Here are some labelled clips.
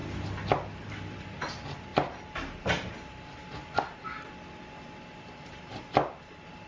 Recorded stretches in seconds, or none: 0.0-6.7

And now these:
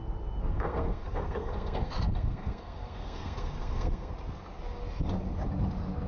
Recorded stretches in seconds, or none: 0.0-0.4; 4.1-6.1

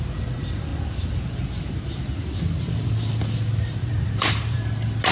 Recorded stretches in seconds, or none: 0.0-3.8; 4.6-5.1

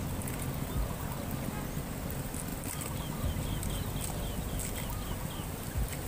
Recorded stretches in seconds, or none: 0.0-2.5

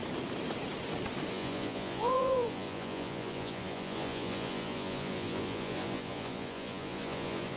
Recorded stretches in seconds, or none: 0.0-1.3